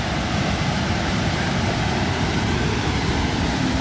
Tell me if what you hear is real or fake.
real